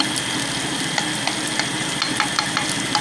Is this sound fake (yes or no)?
no